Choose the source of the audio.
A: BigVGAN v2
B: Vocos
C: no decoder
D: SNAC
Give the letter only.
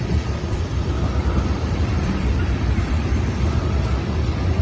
A